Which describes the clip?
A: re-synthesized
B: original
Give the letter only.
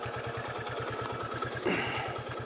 B